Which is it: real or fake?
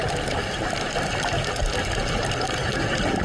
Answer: real